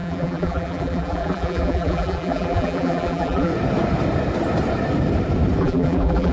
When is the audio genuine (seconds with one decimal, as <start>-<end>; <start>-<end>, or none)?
3.5-5.6